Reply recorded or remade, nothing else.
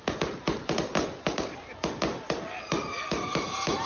recorded